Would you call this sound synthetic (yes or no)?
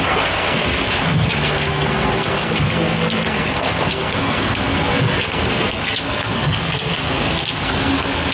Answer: yes